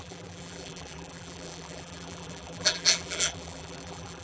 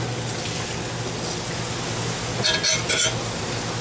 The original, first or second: second